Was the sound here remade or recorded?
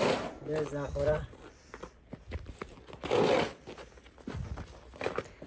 recorded